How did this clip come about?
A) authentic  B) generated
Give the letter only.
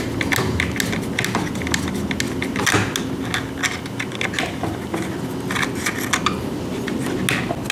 A